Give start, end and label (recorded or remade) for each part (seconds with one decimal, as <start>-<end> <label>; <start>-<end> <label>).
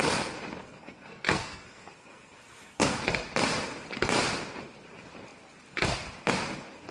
0.0-0.6 recorded; 0.6-3.0 remade; 3.0-6.9 recorded